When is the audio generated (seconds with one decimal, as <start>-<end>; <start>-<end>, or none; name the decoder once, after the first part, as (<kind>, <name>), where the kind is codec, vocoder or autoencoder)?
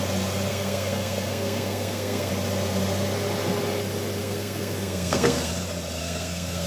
0.5-2.3 (codec, SNAC); 4.2-5.5; 6.0-6.7